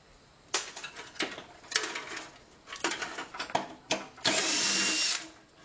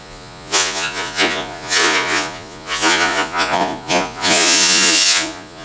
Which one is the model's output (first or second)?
second